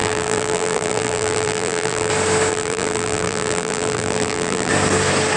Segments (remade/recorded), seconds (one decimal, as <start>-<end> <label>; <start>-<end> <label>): 0.0-2.1 remade; 2.1-2.5 recorded; 2.5-4.7 remade; 4.7-5.4 recorded